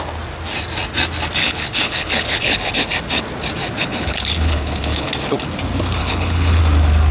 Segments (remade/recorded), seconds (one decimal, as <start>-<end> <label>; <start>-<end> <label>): 0.0-1.4 recorded; 1.4-2.7 remade; 2.7-3.8 recorded; 3.8-5.1 remade; 5.1-6.0 recorded; 6.0-6.6 remade; 6.6-7.1 recorded